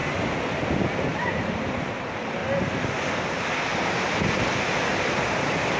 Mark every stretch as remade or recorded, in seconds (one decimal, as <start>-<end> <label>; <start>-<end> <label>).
0.0-5.8 recorded